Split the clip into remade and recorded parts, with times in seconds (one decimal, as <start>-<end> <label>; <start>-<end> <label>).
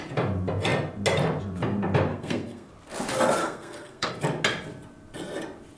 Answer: 0.0-2.1 recorded; 2.1-2.7 remade; 2.7-3.4 recorded; 3.4-4.1 remade; 4.1-5.8 recorded